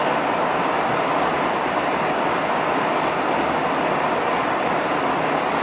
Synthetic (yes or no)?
no